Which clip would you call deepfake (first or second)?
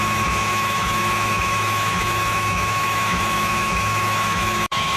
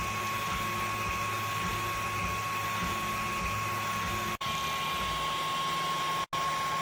first